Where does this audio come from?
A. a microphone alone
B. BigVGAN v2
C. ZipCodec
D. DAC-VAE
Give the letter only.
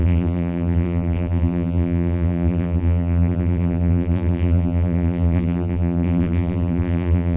B